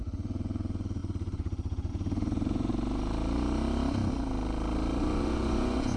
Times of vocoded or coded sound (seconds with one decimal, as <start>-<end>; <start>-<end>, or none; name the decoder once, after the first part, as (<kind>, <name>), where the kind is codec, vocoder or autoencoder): 0.0-2.7 (vocoder, Vocos); 5.0-6.0